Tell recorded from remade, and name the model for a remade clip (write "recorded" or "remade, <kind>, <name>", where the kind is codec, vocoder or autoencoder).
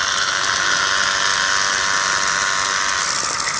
recorded